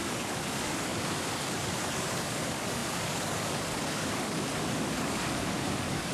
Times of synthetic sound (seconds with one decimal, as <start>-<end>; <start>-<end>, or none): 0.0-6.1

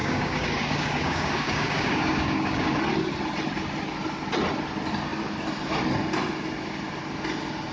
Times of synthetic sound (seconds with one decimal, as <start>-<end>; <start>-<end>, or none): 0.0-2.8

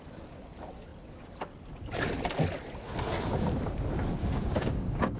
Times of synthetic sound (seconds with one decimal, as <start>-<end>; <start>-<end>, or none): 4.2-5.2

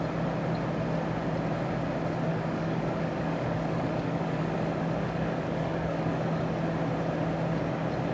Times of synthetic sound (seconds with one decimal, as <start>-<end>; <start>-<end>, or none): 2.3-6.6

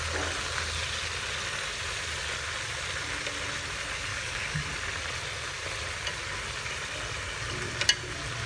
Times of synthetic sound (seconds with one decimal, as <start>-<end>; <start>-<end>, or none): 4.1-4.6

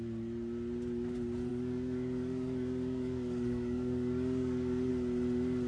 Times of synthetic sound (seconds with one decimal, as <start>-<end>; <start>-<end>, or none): 1.5-4.9